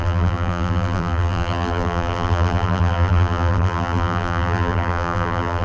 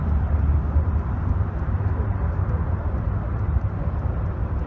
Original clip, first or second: second